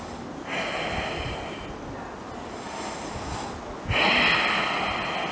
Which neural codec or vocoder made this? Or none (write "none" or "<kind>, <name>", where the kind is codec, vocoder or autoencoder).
none